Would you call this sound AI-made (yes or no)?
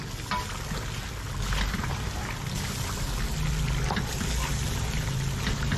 no